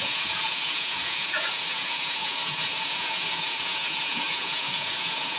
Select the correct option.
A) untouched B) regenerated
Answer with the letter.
B